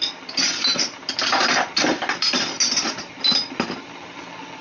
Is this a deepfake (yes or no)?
no